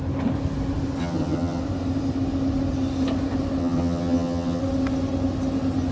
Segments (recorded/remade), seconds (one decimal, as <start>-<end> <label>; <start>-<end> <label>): 0.0-1.0 recorded; 1.0-1.6 remade; 1.6-3.6 recorded; 3.6-4.6 remade; 4.6-5.9 recorded